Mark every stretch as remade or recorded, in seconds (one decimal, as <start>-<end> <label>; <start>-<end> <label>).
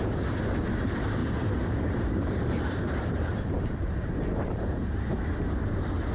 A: 0.0-6.1 remade